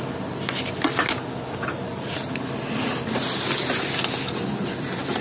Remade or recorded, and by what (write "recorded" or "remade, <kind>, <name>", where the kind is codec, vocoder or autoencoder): recorded